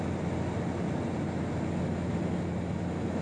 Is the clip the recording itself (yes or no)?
yes